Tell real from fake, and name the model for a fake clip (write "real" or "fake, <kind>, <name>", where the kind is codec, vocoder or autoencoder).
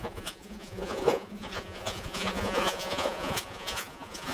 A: fake, vocoder, Vocos